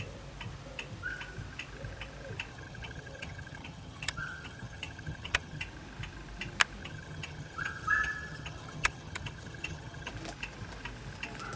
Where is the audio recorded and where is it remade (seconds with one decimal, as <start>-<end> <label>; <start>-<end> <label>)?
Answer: 0.0-2.5 recorded; 2.5-5.6 remade; 5.6-6.8 recorded; 6.8-10.1 remade; 10.1-11.6 recorded